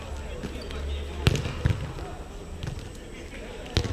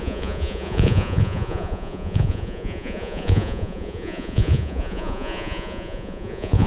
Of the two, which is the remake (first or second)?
second